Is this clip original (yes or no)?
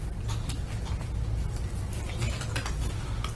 yes